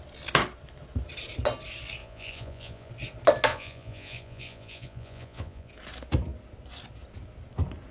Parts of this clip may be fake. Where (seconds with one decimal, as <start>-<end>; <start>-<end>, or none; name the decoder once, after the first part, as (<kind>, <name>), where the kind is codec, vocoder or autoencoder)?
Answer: 2.0-2.9 (vocoder, Vocos); 3.5-5.7